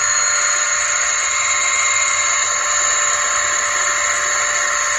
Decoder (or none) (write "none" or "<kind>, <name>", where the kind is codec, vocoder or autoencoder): none